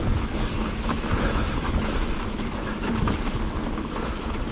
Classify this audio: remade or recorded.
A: remade